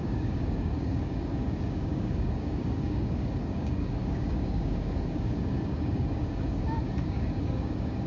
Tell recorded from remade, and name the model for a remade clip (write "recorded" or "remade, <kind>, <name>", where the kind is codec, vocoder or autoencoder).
remade, codec, DAC